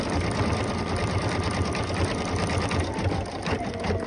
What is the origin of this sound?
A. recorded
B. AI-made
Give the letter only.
A